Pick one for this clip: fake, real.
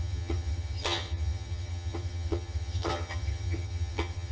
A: fake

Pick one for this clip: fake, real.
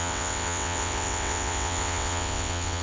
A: fake